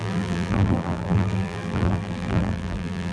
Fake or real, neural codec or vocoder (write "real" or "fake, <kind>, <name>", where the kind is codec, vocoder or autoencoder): fake, vocoder, BigVGAN v2